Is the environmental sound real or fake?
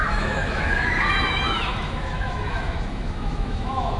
fake